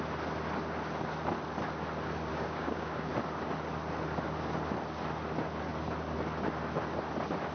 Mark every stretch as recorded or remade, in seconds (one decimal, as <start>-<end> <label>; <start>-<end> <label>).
0.0-2.3 recorded; 2.3-3.1 remade; 3.1-7.5 recorded